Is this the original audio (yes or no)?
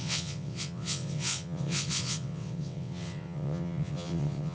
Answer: no